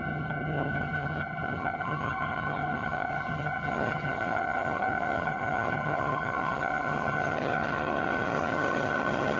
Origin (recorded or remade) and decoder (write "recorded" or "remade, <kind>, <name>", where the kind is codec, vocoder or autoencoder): remade, vocoder, HiFi-GAN